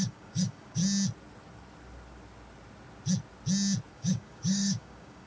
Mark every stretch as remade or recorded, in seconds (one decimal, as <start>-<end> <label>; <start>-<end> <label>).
0.0-0.8 remade; 0.8-3.9 recorded; 3.9-5.3 remade